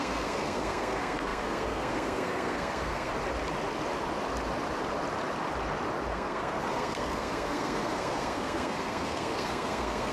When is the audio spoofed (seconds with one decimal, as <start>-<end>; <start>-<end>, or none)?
0.0-3.1; 6.1-10.1